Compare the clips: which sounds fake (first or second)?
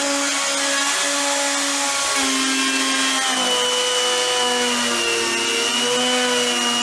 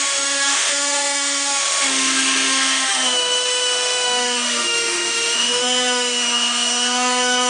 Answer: second